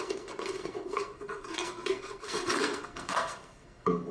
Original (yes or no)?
no